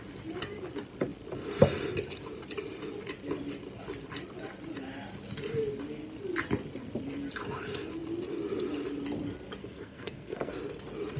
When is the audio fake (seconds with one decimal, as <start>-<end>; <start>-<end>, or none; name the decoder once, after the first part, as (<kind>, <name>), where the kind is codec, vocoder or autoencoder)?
9.6-10.5 (codec, SNAC)